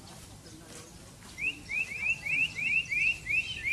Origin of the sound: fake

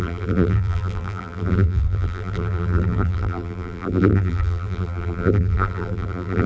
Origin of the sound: fake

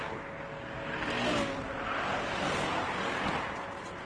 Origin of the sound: real